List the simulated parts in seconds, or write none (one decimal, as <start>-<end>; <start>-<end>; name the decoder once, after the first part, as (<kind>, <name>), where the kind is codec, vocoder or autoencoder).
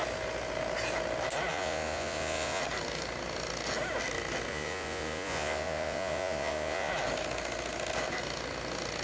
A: 1.5-2.6 (vocoder, Vocos); 4.5-6.9